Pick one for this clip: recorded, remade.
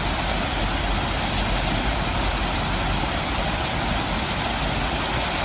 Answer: recorded